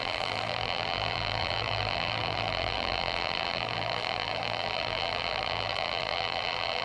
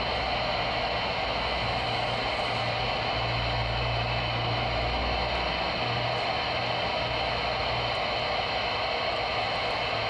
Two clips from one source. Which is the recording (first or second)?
second